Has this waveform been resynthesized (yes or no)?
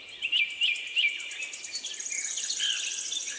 no